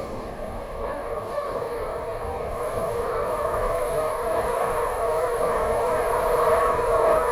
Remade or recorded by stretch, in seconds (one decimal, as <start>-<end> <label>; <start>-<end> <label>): 0.0-6.1 remade; 6.1-6.6 recorded; 6.6-7.3 remade